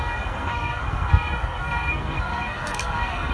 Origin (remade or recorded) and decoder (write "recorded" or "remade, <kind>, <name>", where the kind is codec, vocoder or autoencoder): remade, codec, SNAC